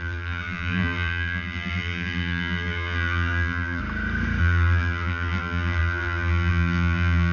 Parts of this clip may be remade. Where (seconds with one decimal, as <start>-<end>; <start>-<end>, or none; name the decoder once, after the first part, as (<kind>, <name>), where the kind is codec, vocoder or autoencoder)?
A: 0.0-3.8 (vocoder, BigVGAN v2); 4.4-7.3